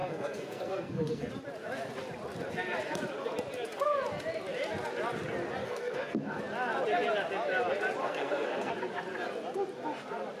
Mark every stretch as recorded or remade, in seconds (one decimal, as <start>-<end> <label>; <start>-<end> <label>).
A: 0.0-1.3 remade; 1.3-5.6 recorded; 5.6-6.4 remade; 6.4-8.0 recorded; 8.0-8.7 remade; 8.7-10.4 recorded